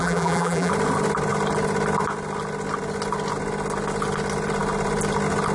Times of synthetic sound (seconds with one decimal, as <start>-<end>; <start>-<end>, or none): 0.0-0.7